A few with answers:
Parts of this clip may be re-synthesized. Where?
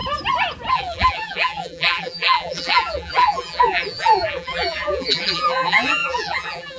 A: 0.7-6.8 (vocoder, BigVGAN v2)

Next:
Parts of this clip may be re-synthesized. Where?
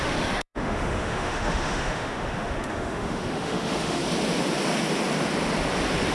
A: 0.0-4.0 (autoencoder, DAC-VAE)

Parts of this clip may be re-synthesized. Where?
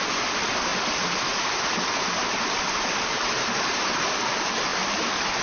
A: none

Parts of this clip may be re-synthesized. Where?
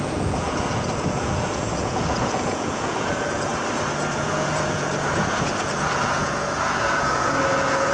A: 0.0-3.5 (vocoder, Vocos); 4.1-7.9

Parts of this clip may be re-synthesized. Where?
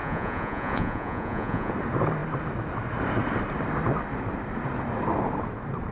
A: 0.0-1.7 (vocoder, Vocos)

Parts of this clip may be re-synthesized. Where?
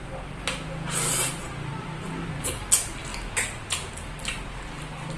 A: none